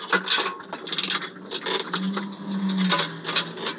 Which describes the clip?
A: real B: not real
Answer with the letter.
A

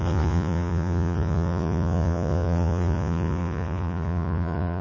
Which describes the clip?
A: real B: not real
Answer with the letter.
B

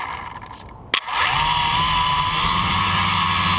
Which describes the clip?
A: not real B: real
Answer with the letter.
B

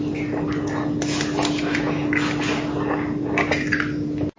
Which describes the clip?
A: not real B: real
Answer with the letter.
B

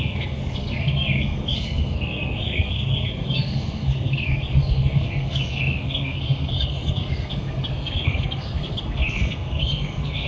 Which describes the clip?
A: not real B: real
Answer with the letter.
A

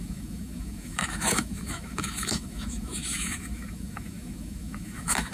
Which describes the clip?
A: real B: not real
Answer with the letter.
B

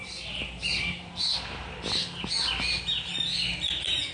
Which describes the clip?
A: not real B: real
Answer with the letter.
B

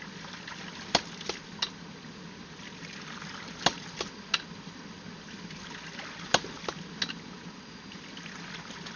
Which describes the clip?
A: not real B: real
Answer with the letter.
B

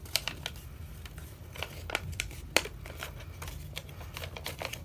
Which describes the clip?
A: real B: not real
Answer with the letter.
A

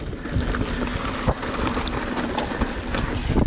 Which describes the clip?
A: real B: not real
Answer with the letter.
A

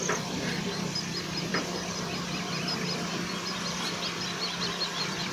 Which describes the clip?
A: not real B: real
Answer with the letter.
A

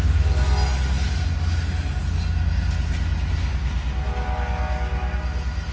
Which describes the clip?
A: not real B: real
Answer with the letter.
B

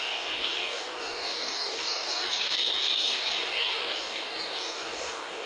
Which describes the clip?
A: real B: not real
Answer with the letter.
B